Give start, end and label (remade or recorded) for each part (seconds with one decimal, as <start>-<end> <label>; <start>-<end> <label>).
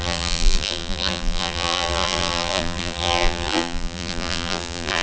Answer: 0.0-5.0 remade